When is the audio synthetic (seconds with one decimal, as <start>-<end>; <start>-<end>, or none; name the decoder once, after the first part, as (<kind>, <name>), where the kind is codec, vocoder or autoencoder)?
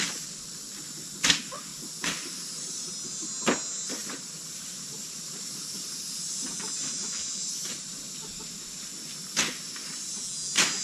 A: 4.0-8.9 (vocoder, BigVGAN v2)